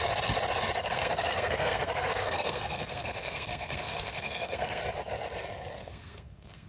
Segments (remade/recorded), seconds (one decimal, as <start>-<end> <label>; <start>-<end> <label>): 0.0-0.8 recorded; 0.8-4.8 remade; 4.8-5.8 recorded; 5.8-6.7 remade